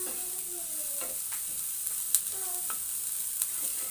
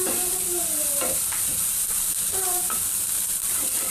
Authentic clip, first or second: first